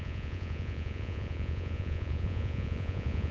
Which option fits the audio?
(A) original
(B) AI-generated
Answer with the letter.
B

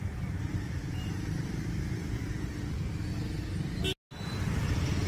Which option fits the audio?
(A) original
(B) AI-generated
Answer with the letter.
A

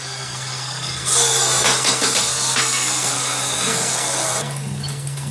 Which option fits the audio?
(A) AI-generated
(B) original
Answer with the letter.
A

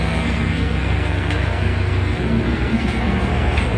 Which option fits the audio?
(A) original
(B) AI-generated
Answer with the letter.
B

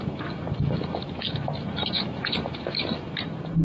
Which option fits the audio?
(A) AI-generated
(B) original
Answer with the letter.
A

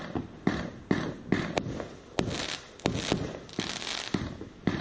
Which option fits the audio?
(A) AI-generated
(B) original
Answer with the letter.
B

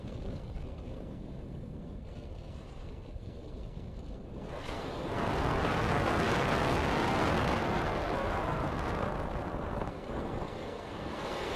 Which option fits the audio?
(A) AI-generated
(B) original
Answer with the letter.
A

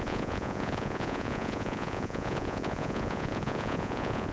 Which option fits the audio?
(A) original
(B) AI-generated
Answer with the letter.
B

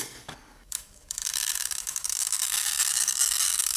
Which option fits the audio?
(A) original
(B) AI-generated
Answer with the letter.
B